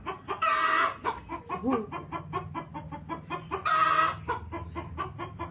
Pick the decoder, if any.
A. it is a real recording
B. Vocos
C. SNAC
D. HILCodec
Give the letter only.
A